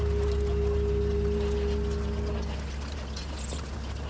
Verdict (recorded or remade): recorded